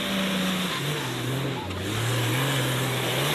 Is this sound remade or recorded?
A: recorded